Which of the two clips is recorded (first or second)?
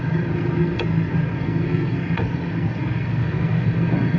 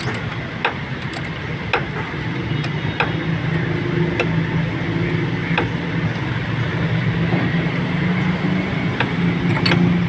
second